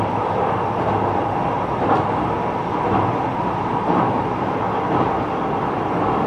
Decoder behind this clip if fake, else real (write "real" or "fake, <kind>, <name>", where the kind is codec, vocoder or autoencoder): real